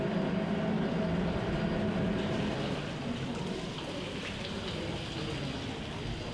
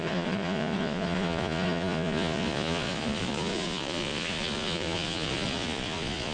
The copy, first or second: second